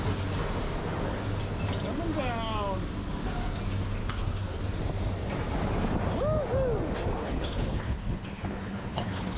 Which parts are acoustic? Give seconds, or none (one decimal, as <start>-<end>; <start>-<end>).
0.0-4.0; 4.6-7.1